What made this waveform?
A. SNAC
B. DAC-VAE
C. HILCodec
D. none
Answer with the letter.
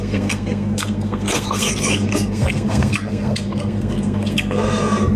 A